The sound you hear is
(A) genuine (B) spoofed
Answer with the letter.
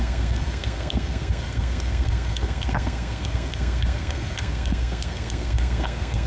B